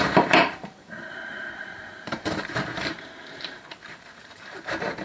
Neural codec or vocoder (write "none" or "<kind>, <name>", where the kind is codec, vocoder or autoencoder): vocoder, BigVGAN v2